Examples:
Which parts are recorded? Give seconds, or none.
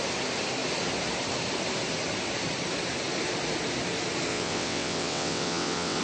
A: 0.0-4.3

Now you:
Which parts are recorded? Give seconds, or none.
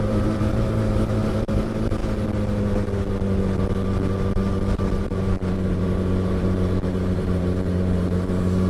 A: 2.0-5.0